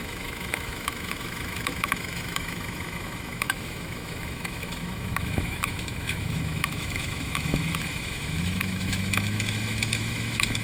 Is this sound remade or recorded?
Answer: remade